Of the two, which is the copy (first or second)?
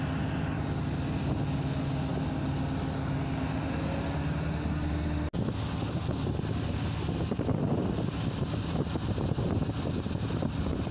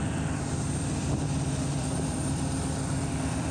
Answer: second